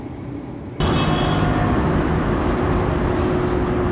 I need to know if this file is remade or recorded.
recorded